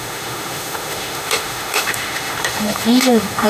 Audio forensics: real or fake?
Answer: fake